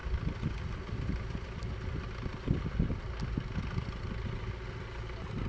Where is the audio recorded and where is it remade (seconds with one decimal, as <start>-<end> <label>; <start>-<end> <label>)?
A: 0.0-5.5 recorded